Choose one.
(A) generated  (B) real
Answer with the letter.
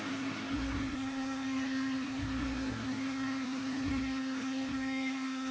A